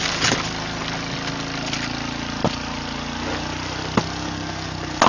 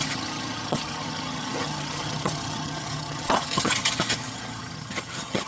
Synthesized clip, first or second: second